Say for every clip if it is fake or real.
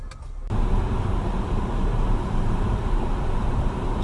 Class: real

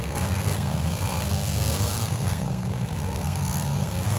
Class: fake